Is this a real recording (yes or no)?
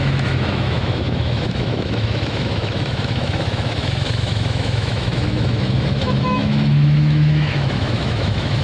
no